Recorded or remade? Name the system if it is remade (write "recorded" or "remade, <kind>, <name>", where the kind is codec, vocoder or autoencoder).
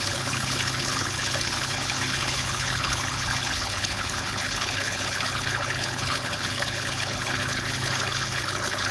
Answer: remade, codec, HILCodec